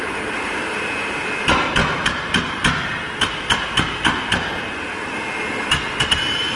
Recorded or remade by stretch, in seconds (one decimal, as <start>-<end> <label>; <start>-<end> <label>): 0.0-6.6 recorded